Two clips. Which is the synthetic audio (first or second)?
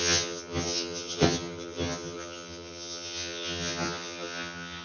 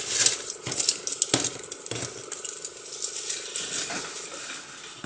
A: first